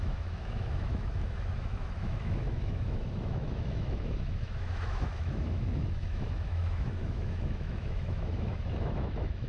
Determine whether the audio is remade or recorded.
remade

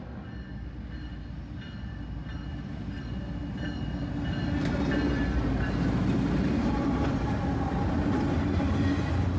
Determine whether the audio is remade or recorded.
recorded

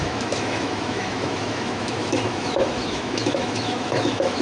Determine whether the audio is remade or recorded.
remade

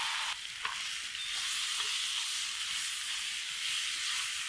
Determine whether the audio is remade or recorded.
recorded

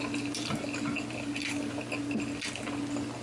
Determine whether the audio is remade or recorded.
recorded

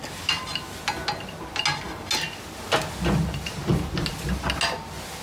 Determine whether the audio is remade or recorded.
recorded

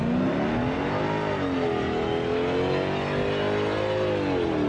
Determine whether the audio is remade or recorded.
recorded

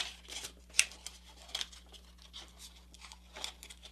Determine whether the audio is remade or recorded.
recorded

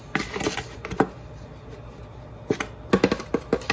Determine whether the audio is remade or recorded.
recorded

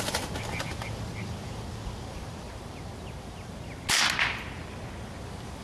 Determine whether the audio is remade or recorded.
recorded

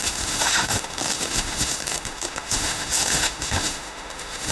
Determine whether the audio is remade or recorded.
remade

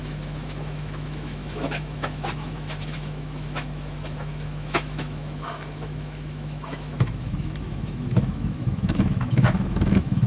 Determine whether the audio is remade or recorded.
remade